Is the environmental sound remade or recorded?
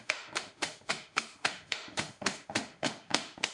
remade